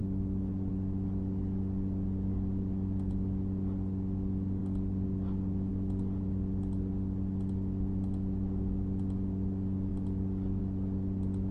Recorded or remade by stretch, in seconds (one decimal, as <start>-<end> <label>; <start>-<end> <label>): 0.0-11.5 recorded